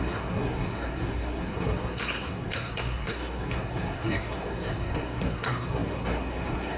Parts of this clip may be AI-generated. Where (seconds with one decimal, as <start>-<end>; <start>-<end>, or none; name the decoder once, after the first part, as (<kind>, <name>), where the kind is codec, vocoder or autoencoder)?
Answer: 0.0-6.8 (codec, SNAC)